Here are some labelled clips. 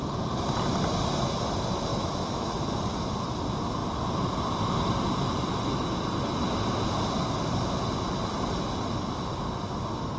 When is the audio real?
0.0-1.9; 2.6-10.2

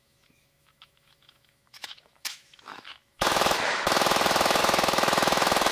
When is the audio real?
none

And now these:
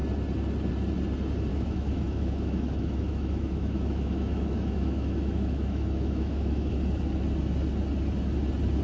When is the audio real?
0.0-1.5; 6.7-8.8

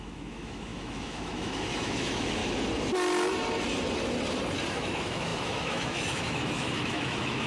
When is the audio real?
2.4-4.7